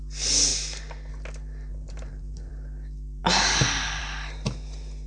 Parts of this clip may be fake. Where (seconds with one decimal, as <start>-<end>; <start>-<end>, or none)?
1.7-2.5